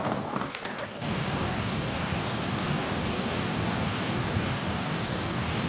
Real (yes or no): no